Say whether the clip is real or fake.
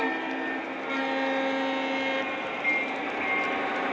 real